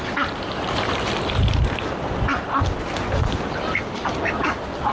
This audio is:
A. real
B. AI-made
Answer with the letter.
A